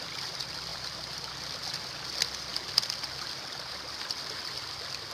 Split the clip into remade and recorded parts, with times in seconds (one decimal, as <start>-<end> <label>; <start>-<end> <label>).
0.0-0.7 recorded; 0.7-1.3 remade; 1.3-5.1 recorded